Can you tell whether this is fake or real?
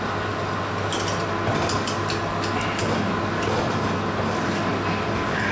real